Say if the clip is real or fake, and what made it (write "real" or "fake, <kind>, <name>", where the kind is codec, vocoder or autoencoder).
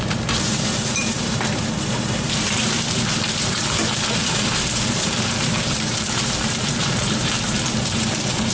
fake, vocoder, BigVGAN v2